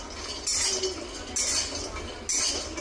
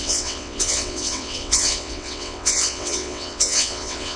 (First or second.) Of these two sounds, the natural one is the first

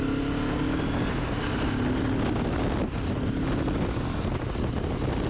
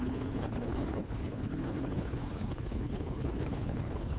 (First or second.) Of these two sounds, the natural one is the first